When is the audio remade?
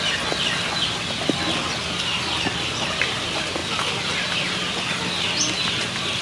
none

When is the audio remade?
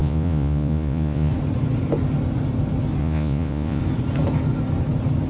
0.0-1.3 (vocoder, Vocos); 3.0-3.8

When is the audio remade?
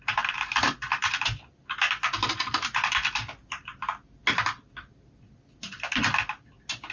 none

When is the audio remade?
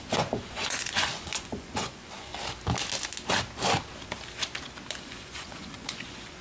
0.0-2.3 (vocoder, Vocos); 5.0-6.4